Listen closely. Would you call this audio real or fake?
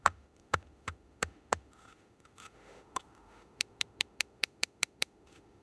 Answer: fake